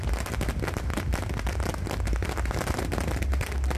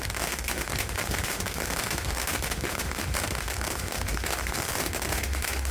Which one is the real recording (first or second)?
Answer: first